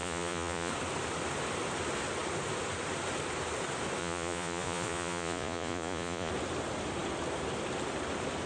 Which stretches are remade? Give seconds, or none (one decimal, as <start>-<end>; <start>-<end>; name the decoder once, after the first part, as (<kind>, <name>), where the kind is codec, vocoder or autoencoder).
0.0-0.7 (vocoder, Vocos); 4.0-6.3